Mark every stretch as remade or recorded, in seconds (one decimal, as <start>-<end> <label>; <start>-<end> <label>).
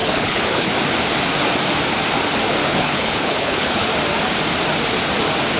0.0-0.7 remade; 0.7-2.6 recorded; 2.6-3.9 remade; 3.9-5.6 recorded